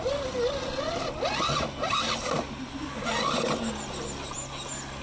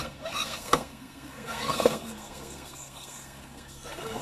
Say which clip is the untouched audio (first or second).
first